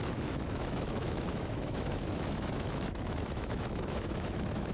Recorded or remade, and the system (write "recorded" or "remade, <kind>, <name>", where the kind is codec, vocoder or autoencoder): remade, autoencoder, DAC-VAE